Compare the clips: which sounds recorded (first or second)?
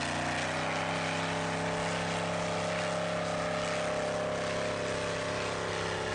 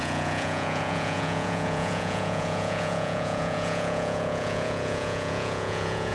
first